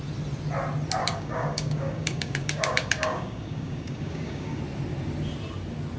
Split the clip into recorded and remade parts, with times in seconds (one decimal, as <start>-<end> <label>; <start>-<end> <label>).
0.0-1.0 recorded; 1.0-4.6 remade; 4.6-6.0 recorded